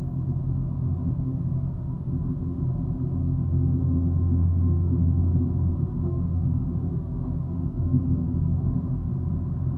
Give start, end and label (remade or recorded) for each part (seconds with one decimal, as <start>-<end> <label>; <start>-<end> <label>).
0.0-0.4 recorded; 0.4-2.6 remade; 2.6-3.2 recorded; 3.2-5.2 remade; 5.2-5.9 recorded; 5.9-9.1 remade; 9.1-9.8 recorded